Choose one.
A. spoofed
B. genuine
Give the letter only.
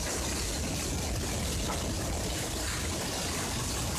B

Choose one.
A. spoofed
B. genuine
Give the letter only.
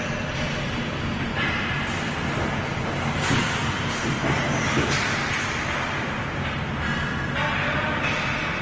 B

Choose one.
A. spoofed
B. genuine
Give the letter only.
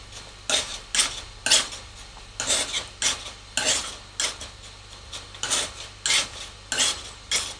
B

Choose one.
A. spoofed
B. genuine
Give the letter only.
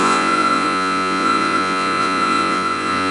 A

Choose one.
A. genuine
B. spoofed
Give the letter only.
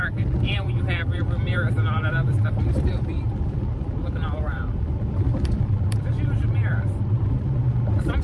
B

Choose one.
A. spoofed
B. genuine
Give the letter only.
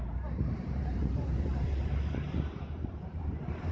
A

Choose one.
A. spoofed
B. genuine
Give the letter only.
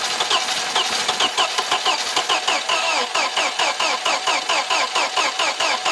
B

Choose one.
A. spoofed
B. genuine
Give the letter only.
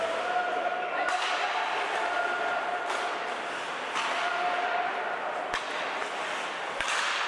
B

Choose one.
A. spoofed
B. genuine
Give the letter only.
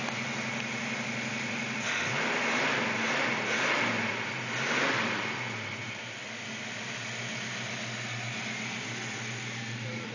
B